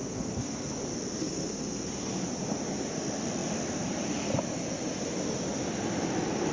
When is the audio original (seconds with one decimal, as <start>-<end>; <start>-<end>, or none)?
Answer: 0.7-1.2; 2.1-6.5